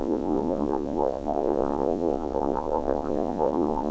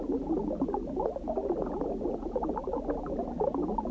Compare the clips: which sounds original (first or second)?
second